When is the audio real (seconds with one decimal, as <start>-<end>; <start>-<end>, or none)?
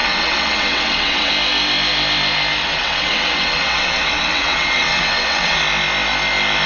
1.3-2.6; 5.6-6.7